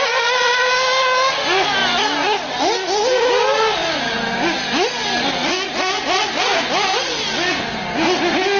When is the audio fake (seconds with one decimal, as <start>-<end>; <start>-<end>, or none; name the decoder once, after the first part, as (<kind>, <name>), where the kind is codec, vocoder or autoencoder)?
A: none